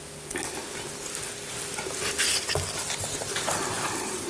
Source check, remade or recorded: recorded